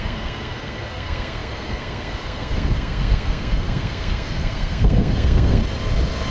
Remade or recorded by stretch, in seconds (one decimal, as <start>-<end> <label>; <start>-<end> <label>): 0.0-5.6 remade; 5.6-6.3 recorded